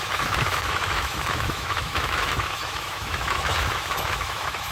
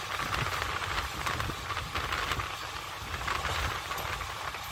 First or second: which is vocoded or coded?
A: first